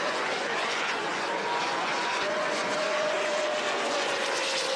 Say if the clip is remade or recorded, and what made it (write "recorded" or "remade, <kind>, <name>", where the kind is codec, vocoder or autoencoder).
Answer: remade, vocoder, Vocos